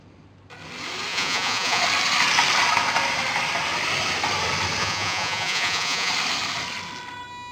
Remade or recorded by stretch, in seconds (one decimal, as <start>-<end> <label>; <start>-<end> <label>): 0.0-1.1 recorded; 1.1-1.8 remade; 1.8-4.8 recorded; 4.8-6.1 remade; 6.1-7.5 recorded